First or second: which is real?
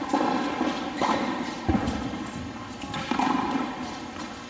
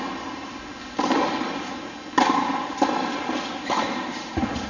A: second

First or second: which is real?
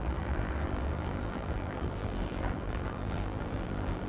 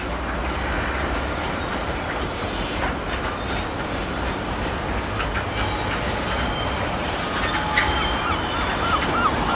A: second